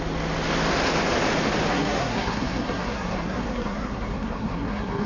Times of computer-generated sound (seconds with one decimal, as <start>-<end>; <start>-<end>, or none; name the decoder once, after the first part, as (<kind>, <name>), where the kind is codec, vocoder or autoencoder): 1.7-5.1 (codec, SNAC)